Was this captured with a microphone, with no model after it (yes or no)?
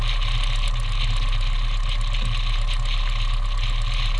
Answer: yes